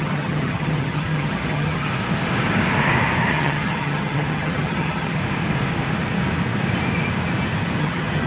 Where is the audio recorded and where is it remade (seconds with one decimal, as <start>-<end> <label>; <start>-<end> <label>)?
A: 0.0-1.9 remade; 1.9-3.3 recorded; 3.3-5.2 remade; 5.2-7.8 recorded; 7.8-8.3 remade